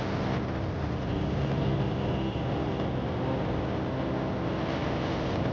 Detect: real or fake real